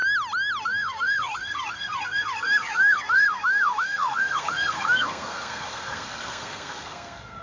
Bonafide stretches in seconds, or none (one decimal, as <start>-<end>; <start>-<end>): 0.0-0.6